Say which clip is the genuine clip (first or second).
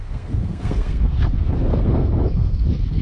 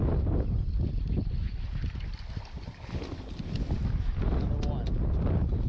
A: second